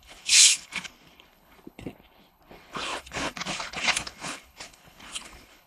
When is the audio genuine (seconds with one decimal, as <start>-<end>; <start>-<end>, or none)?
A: none

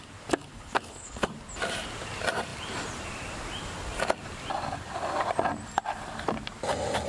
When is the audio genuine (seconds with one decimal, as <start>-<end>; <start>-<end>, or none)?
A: 0.0-0.5; 1.3-7.1

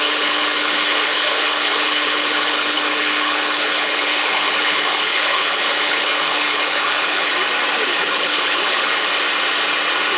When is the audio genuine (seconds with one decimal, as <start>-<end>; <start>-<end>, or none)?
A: 7.3-8.0; 9.1-10.2

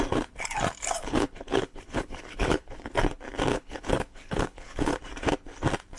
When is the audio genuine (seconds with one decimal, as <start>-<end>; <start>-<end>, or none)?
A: 0.0-1.0; 2.9-3.5; 5.0-6.0

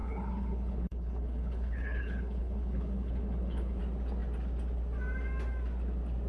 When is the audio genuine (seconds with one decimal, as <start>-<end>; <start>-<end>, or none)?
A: 3.8-6.3

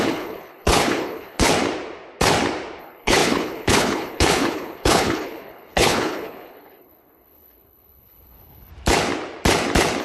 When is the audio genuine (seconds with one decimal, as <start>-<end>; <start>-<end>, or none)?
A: 1.5-2.8; 8.7-10.0